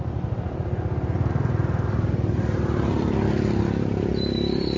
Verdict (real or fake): fake